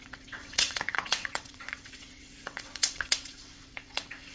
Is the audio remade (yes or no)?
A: yes